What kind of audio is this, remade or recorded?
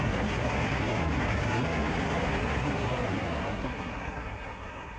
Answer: remade